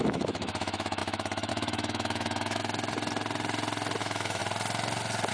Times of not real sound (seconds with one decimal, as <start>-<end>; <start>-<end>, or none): 0.0-2.6; 4.0-4.4